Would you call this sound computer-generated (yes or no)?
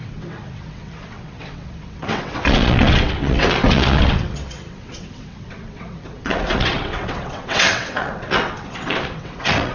yes